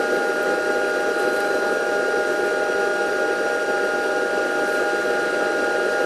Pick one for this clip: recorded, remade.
recorded